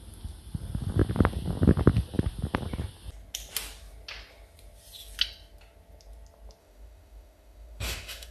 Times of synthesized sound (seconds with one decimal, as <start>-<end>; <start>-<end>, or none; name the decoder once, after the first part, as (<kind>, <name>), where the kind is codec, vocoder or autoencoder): 6.6-8.3 (autoencoder, DAC-VAE)